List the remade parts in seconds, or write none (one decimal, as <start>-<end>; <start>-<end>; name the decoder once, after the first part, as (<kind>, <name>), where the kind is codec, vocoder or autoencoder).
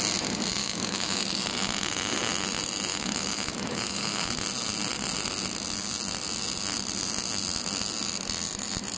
0.6-1.2 (autoencoder, DAC-VAE); 2.9-4.3